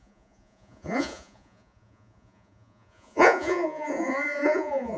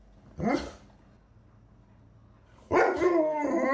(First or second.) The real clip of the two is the second